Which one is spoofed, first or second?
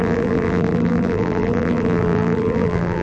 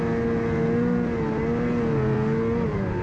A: first